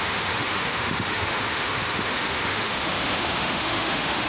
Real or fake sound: fake